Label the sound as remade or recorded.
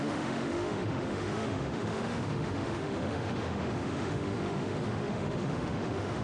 remade